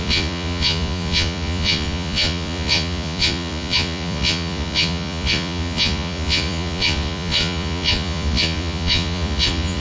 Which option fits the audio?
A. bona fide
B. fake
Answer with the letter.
B